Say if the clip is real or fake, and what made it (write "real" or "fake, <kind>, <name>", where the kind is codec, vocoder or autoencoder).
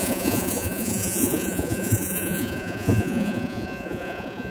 fake, vocoder, Vocos